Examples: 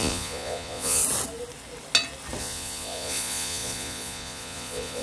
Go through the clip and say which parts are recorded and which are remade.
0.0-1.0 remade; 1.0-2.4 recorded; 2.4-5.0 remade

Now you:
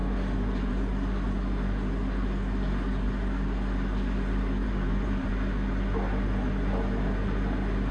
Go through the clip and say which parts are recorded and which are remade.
0.0-4.6 recorded; 4.6-5.3 remade; 5.3-7.9 recorded